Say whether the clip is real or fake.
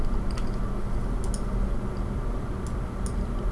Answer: real